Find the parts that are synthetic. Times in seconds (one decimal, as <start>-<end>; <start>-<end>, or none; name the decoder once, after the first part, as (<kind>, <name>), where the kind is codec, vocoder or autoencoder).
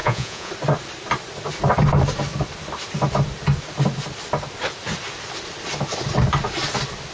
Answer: 0.0-0.5 (vocoder, Vocos)